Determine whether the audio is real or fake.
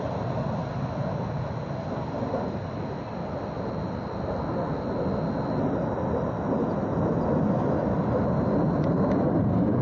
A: real